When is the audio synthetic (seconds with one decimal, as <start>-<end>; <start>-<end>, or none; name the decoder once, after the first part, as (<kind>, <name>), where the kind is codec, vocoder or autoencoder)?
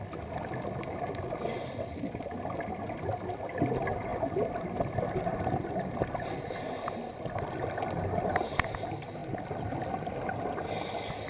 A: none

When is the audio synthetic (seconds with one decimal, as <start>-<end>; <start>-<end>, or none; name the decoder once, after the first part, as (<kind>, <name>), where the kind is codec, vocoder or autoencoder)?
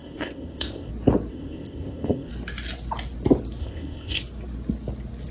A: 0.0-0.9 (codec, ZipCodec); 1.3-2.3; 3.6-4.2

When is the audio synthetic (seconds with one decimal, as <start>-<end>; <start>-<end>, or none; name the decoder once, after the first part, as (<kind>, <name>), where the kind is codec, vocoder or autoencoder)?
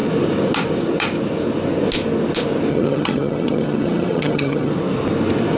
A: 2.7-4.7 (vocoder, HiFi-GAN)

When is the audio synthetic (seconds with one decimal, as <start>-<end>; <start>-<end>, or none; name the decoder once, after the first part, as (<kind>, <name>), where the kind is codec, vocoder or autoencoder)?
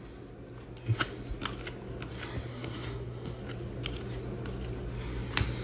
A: 2.5-3.4 (codec, SNAC)